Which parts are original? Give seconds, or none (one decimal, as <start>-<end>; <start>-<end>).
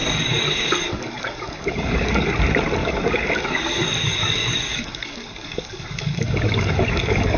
2.3-2.8